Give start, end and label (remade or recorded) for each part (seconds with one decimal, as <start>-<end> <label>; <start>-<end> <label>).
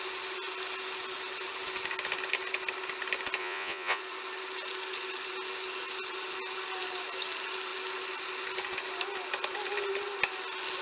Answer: 0.0-3.4 recorded; 3.4-4.0 remade; 4.0-10.8 recorded